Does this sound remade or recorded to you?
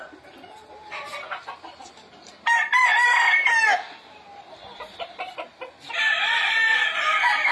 recorded